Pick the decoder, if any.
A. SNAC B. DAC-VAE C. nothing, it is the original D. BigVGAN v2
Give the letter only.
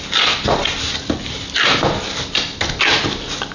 C